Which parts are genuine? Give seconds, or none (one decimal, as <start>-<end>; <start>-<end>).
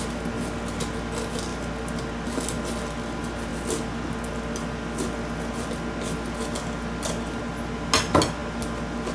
0.0-9.1